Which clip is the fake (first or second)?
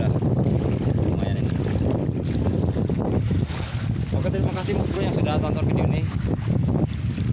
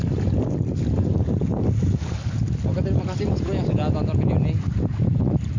second